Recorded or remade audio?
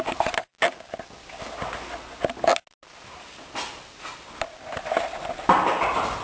recorded